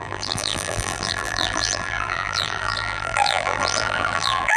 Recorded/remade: remade